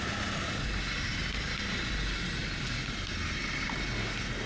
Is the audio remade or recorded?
recorded